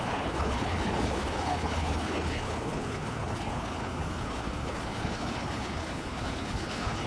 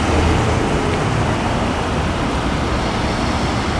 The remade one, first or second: first